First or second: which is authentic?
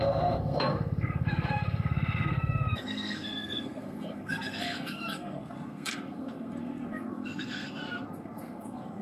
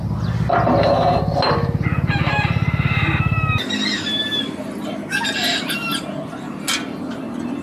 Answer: second